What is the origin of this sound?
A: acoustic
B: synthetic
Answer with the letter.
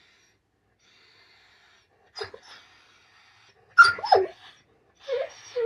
A